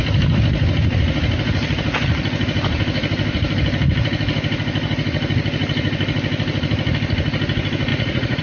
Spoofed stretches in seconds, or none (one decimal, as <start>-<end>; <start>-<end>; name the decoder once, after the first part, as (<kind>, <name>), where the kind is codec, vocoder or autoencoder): 7.9-8.4 (vocoder, Vocos)